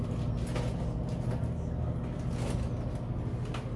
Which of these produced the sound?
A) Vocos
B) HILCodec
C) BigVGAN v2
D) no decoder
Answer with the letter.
D